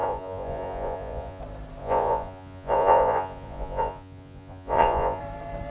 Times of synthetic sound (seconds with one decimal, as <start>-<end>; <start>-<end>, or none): 0.0-1.4; 1.8-5.2